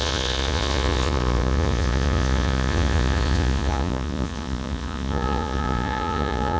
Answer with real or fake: fake